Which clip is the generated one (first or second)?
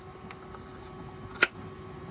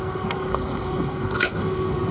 second